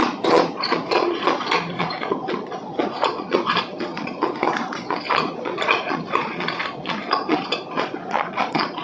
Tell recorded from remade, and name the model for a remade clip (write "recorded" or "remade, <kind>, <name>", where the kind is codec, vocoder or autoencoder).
remade, vocoder, Vocos